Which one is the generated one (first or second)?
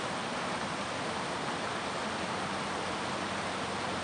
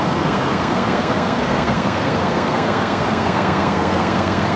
second